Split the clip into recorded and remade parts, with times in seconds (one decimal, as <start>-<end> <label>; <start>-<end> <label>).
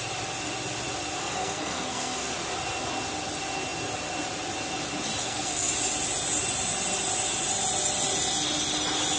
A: 0.0-1.2 recorded; 1.2-2.3 remade; 2.3-5.2 recorded; 5.2-5.7 remade; 5.7-9.2 recorded